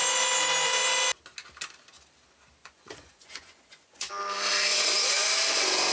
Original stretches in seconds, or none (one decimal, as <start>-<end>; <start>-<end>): 0.0-2.6; 4.1-4.7; 5.3-5.9